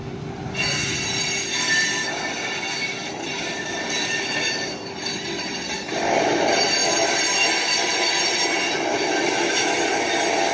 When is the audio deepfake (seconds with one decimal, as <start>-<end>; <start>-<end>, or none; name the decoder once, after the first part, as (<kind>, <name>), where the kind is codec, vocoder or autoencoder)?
6.8-7.3 (vocoder, BigVGAN v2)